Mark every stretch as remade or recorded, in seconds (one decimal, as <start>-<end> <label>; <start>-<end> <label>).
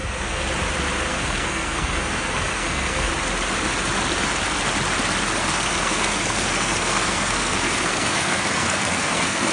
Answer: 0.0-0.5 remade; 0.5-1.1 recorded; 1.1-3.1 remade; 3.1-5.4 recorded; 5.4-9.5 remade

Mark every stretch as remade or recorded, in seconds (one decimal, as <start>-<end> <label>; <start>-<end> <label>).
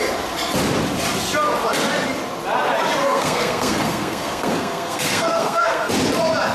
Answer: 0.0-3.0 recorded; 3.0-5.9 remade; 5.9-6.5 recorded